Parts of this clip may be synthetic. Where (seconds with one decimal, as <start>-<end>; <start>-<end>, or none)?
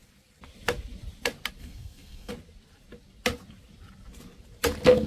1.6-2.3